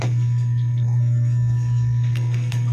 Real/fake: fake